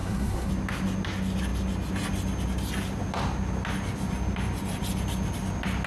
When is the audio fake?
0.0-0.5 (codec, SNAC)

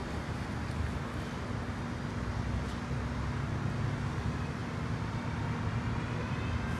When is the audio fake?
none